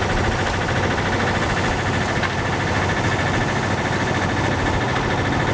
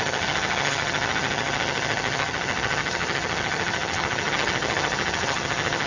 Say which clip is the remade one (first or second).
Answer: second